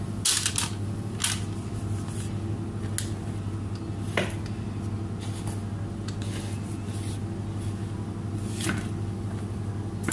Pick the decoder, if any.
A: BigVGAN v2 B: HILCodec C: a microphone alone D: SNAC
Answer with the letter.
C